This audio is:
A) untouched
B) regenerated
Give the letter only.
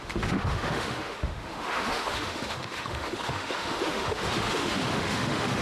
B